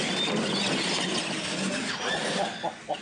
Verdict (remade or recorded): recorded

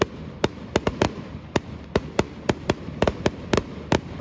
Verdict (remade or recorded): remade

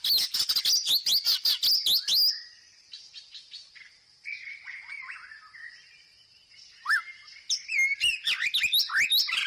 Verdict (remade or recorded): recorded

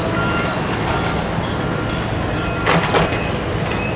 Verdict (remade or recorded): recorded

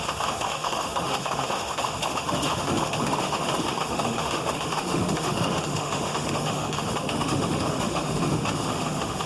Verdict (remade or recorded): remade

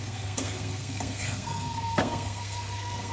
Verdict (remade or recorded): remade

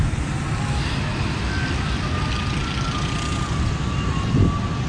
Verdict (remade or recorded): recorded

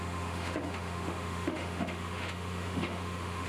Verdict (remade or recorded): remade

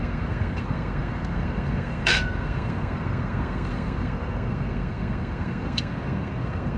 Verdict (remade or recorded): remade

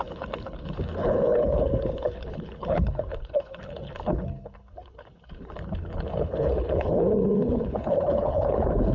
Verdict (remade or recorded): remade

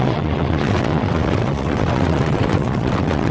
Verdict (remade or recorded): remade